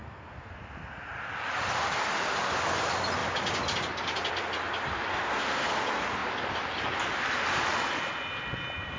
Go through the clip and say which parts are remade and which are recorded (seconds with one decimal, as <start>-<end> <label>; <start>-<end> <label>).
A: 0.0-0.5 remade; 0.5-5.1 recorded; 5.1-5.7 remade; 5.7-9.0 recorded